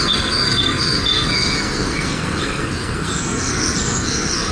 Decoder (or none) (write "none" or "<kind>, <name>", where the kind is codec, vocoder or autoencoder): codec, SNAC